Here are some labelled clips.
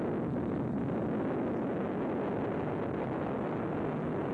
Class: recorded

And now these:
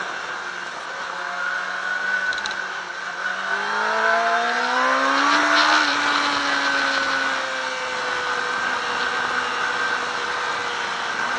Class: recorded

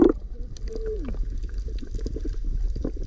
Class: recorded